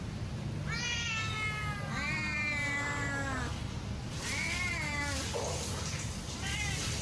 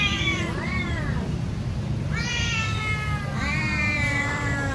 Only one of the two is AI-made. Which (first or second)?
second